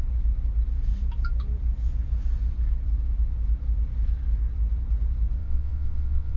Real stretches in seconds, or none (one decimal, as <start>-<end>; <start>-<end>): 0.0-5.4